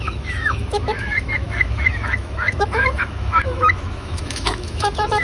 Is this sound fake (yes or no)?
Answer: yes